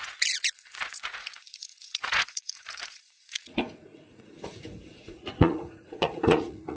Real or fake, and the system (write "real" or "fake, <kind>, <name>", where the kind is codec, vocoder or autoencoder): fake, vocoder, Vocos